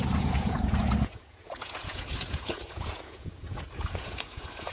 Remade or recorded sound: remade